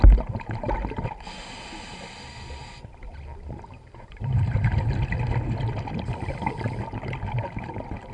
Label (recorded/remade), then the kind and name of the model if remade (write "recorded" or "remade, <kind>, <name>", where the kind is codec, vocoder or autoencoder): recorded